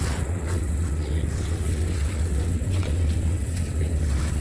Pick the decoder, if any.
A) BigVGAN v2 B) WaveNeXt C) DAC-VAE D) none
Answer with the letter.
B